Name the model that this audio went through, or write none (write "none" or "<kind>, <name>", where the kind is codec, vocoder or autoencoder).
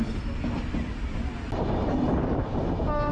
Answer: none